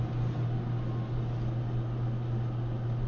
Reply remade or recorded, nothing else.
recorded